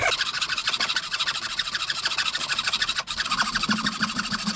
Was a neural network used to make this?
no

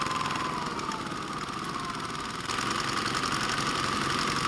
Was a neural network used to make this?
no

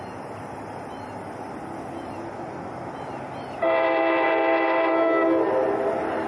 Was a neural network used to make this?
no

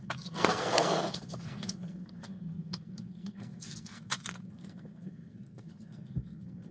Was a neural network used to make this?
yes